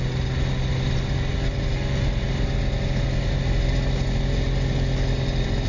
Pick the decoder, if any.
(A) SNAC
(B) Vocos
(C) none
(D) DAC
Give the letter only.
C